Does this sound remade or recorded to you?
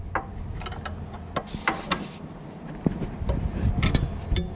recorded